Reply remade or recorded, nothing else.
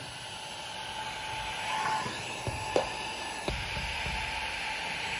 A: recorded